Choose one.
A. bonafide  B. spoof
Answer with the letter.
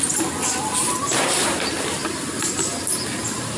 A